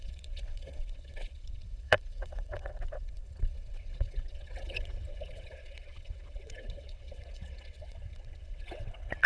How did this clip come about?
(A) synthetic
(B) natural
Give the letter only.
A